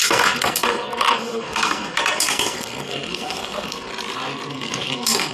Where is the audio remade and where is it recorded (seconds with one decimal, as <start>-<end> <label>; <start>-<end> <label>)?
0.0-3.9 remade; 3.9-4.5 recorded; 4.5-5.3 remade